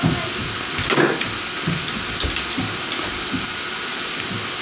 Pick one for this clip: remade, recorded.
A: recorded